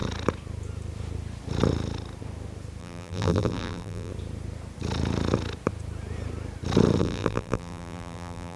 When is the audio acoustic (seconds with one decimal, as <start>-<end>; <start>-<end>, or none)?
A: 0.0-2.8; 4.1-7.0